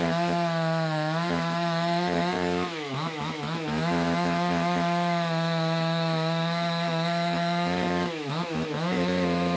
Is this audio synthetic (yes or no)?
yes